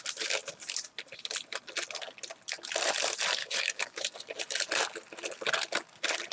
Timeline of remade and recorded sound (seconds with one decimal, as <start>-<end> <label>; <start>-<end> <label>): 0.0-3.4 recorded; 3.4-4.0 remade; 4.0-6.3 recorded